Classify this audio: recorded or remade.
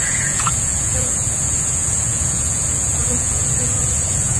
remade